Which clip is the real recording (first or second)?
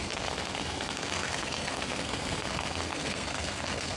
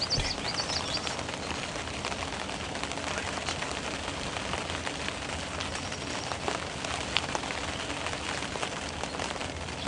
second